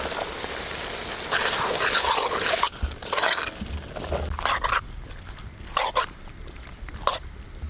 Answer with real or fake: real